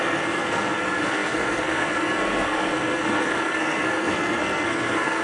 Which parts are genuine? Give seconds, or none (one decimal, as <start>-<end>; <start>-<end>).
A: none